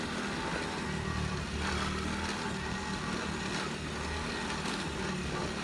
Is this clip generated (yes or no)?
no